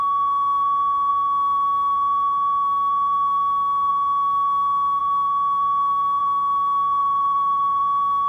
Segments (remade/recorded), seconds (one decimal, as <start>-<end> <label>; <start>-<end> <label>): 0.0-7.0 recorded; 7.0-7.8 remade; 7.8-8.3 recorded

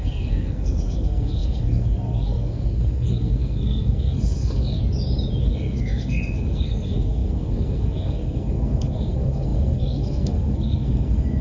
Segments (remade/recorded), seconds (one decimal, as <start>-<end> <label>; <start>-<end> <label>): 0.0-4.8 remade; 4.8-5.4 recorded; 5.4-11.4 remade

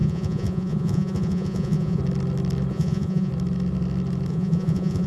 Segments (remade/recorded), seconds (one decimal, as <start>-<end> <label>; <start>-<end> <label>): 0.0-2.0 remade; 2.0-2.7 recorded; 2.7-3.3 remade; 3.3-4.3 recorded; 4.3-5.1 remade

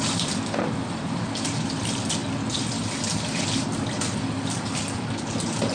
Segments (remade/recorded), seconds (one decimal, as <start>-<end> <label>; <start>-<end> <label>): 0.0-5.7 recorded